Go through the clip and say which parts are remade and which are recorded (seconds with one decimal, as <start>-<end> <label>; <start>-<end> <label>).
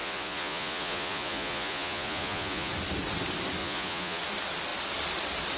0.0-2.7 remade; 2.7-3.6 recorded; 3.6-4.2 remade; 4.2-5.6 recorded